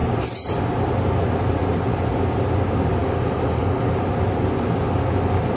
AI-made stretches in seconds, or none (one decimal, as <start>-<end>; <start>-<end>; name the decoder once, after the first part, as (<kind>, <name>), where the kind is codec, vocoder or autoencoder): 3.0-3.9 (codec, DAC)